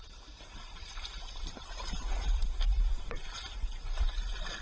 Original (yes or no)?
no